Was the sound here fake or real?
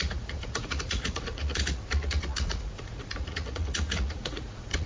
fake